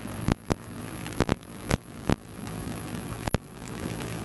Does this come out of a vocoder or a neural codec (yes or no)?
yes